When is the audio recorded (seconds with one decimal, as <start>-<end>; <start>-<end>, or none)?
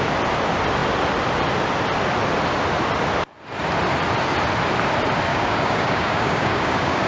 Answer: 0.0-5.3